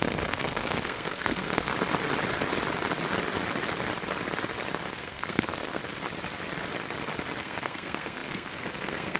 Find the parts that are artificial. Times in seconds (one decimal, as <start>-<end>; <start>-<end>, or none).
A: 0.0-1.7; 4.9-5.8; 7.4-9.2